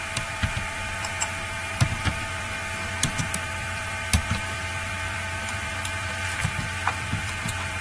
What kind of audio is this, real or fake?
fake